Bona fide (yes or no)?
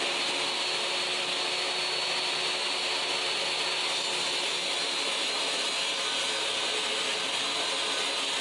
yes